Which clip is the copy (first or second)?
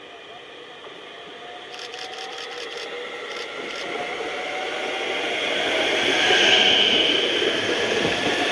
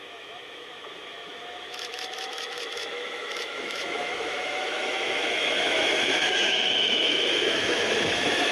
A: second